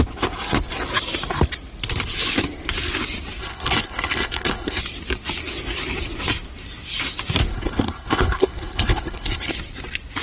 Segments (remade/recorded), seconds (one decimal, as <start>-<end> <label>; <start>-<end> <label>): 0.0-3.4 recorded; 3.4-4.8 remade; 4.8-7.5 recorded; 7.5-9.5 remade; 9.5-10.2 recorded